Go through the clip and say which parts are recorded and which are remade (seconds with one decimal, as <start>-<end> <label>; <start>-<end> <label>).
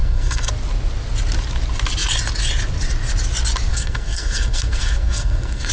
0.0-0.5 remade; 0.5-3.7 recorded; 3.7-5.7 remade